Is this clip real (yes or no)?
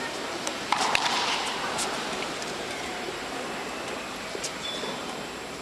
no